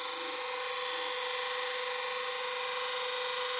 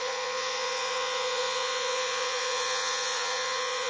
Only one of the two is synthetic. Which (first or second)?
second